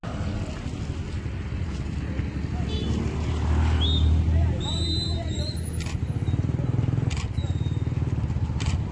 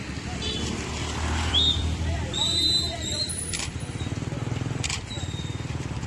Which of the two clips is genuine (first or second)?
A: first